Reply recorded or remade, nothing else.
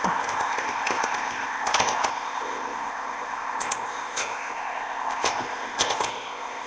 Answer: remade